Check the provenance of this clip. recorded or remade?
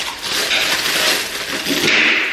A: recorded